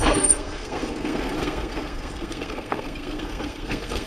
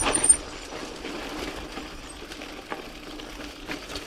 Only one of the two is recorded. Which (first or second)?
second